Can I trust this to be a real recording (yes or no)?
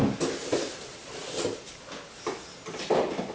yes